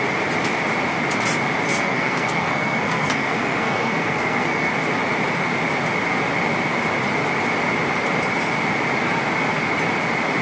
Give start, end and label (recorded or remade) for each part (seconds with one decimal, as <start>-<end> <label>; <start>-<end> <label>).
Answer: 0.0-1.7 recorded; 1.7-4.7 remade; 4.7-10.4 recorded

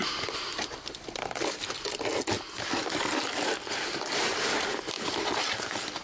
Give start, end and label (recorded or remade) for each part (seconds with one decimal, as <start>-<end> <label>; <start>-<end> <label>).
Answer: 0.0-6.0 recorded

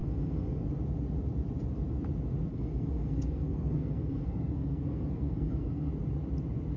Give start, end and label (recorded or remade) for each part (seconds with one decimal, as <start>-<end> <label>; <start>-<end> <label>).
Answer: 0.0-0.7 remade; 0.7-2.5 recorded; 2.5-5.9 remade; 5.9-6.8 recorded

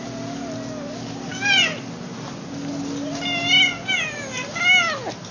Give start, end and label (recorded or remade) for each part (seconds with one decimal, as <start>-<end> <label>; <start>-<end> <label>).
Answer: 0.0-5.3 recorded

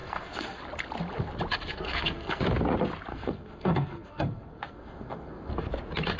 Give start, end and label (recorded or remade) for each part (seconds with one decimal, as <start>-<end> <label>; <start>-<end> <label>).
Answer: 0.0-0.6 remade; 0.6-1.7 recorded; 1.7-2.4 remade; 2.4-3.1 recorded; 3.1-5.5 remade; 5.5-6.2 recorded

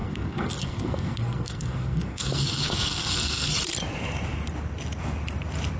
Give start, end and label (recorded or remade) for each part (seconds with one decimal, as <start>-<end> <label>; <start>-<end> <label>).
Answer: 0.0-3.5 remade; 3.5-5.8 recorded